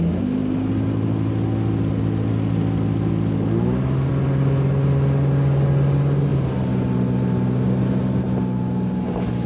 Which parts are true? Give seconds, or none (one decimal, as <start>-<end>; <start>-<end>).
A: 0.0-9.5